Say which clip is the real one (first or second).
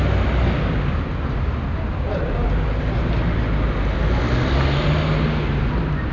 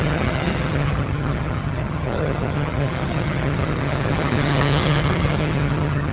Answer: first